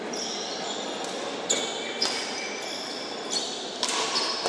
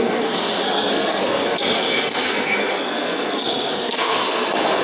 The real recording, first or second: first